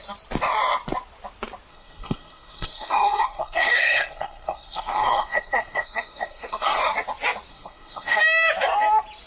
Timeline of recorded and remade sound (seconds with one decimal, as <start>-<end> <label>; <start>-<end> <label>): 0.0-1.7 recorded; 1.7-6.8 remade; 6.8-7.5 recorded; 7.5-8.2 remade; 8.2-9.3 recorded